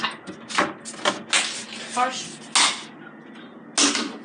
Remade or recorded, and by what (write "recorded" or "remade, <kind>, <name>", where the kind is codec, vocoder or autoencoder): recorded